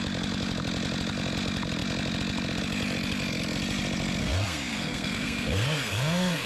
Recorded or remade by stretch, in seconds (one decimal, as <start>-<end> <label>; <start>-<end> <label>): 0.0-4.2 recorded; 4.2-6.5 remade

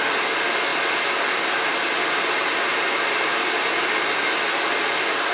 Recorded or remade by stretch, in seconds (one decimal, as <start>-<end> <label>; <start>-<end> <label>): 0.0-5.3 recorded

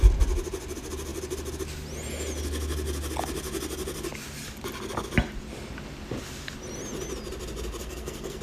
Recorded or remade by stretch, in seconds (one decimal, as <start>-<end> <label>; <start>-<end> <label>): 0.0-7.8 recorded; 7.8-8.4 remade

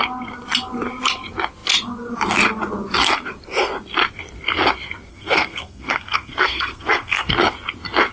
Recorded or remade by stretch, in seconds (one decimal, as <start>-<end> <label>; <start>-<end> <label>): 0.0-5.1 recorded; 5.1-7.3 remade; 7.3-8.1 recorded

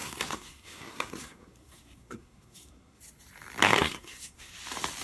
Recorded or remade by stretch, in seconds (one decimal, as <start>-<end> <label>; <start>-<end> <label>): 0.0-3.0 remade; 3.0-3.6 recorded; 3.6-4.5 remade; 4.5-5.0 recorded

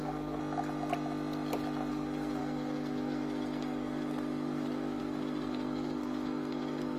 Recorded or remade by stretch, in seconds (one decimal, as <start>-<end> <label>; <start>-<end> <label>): 0.0-0.4 remade; 0.4-1.9 recorded; 1.9-7.0 remade

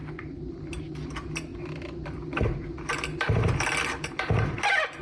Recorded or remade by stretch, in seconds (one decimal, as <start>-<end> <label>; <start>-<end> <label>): 0.0-5.0 recorded